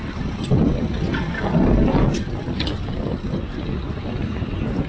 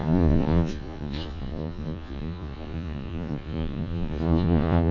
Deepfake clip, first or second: second